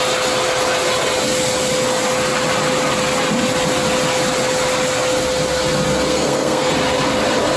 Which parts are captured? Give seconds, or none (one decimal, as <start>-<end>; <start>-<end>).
0.0-6.1; 6.7-7.6